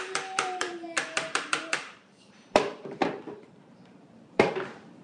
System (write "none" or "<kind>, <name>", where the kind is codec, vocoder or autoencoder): vocoder, BigVGAN v2